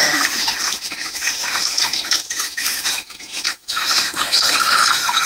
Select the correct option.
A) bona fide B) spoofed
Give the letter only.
B